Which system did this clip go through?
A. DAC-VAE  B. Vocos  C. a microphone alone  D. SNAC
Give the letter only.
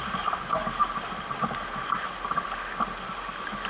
C